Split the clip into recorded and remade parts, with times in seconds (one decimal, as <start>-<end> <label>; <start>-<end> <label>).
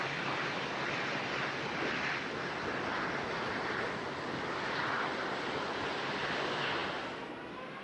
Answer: 0.0-7.8 recorded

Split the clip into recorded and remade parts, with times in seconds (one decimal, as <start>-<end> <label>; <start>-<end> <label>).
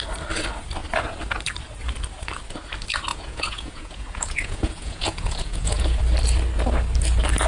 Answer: 0.0-3.1 recorded; 3.1-6.0 remade; 6.0-7.5 recorded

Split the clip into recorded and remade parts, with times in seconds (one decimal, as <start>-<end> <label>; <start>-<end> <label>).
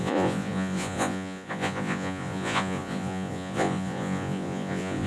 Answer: 0.0-5.1 remade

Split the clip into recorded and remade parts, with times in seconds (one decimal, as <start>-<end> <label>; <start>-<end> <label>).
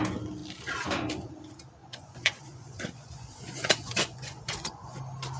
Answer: 0.0-1.8 recorded; 1.8-5.0 remade; 5.0-5.4 recorded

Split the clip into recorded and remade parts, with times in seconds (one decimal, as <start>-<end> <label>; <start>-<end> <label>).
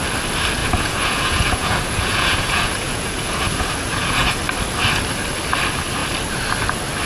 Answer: 0.0-0.6 recorded; 0.6-4.4 remade; 4.4-7.1 recorded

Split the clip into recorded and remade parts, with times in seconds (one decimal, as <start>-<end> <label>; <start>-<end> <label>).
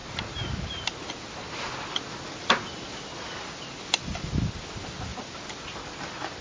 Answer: 0.0-6.4 recorded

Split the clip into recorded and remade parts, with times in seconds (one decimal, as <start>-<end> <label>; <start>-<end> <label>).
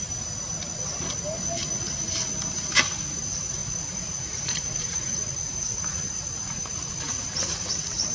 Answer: 0.0-3.6 recorded; 3.6-8.1 remade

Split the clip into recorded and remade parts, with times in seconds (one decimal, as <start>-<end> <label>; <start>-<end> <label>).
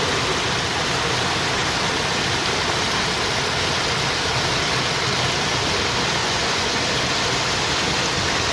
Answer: 0.0-6.2 recorded; 6.2-6.8 remade; 6.8-8.5 recorded